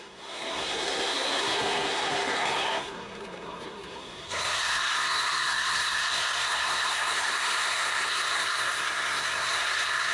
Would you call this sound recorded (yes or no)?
no